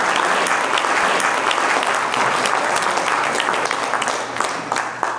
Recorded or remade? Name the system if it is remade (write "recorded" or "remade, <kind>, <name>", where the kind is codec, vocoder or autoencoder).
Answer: recorded